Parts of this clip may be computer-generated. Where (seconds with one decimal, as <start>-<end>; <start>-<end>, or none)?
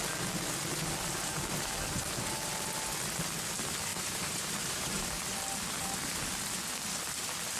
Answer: 3.9-5.1